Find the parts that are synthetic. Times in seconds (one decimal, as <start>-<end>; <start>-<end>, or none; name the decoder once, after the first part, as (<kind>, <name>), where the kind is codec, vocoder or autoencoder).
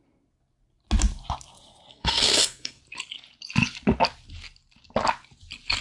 1.9-2.8 (codec, SNAC)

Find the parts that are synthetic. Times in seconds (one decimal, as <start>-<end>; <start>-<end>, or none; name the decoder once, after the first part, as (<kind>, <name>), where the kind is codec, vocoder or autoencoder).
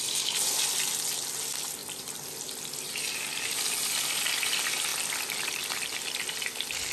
none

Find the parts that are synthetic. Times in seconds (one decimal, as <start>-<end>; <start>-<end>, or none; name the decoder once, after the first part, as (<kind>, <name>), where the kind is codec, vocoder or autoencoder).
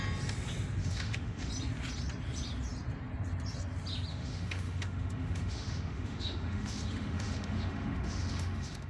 0.8-1.5 (autoencoder, DAC-VAE); 4.1-8.9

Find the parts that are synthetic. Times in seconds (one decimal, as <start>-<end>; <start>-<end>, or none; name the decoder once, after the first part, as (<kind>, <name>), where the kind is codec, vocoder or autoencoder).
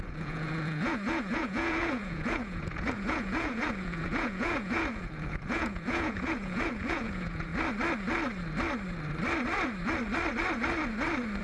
0.0-7.5 (vocoder, Vocos)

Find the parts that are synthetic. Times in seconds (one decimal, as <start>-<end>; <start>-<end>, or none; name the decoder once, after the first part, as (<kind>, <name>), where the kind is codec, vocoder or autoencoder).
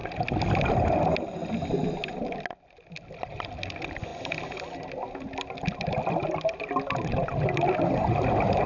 none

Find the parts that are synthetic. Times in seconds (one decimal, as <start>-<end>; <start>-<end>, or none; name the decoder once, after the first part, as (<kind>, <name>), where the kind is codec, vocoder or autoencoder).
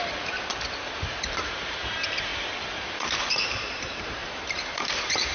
0.8-2.3 (vocoder, BigVGAN v2); 2.8-5.3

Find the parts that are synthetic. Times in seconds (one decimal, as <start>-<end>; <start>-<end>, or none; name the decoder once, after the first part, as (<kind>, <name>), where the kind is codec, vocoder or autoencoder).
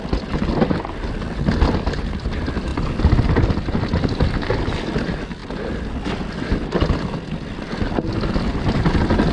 none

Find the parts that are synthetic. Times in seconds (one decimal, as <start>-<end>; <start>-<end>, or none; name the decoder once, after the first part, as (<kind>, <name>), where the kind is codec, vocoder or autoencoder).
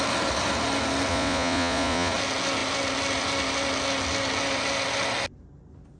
1.1-2.1 (vocoder, Vocos)